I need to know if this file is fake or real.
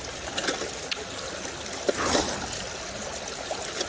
real